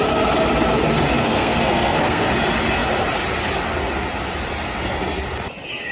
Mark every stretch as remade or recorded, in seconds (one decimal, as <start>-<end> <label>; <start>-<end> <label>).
0.0-1.2 recorded; 1.2-2.3 remade; 2.3-5.9 recorded